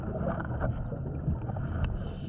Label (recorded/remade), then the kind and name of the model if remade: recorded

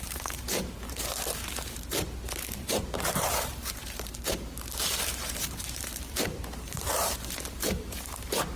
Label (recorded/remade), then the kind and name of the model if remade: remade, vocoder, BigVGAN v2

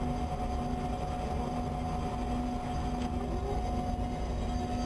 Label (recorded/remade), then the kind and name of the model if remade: recorded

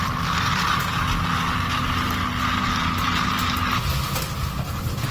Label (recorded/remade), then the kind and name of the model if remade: recorded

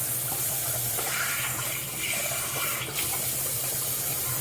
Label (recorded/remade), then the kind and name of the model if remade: remade, vocoder, BigVGAN v2